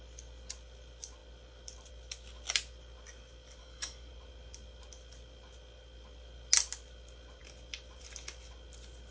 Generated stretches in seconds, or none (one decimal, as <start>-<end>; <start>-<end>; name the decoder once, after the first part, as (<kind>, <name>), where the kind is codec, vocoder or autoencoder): 3.6-4.1 (codec, DAC)